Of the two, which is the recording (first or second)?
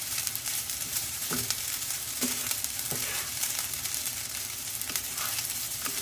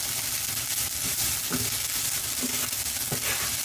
second